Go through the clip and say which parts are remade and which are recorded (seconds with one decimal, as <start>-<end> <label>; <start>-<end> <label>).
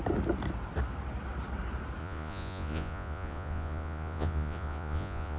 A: 0.0-2.0 recorded; 2.0-5.4 remade